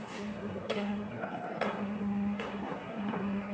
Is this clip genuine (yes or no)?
no